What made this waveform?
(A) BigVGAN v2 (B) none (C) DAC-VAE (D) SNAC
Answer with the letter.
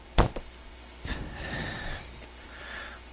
A